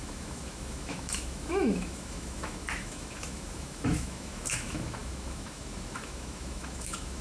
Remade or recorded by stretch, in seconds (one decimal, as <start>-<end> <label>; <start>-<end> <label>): 0.0-7.2 remade